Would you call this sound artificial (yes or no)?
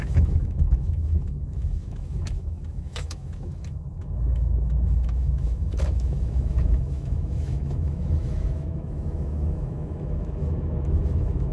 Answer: yes